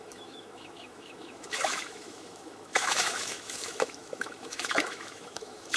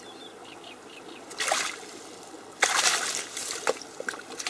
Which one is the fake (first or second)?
first